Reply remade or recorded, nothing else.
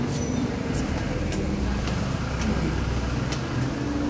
recorded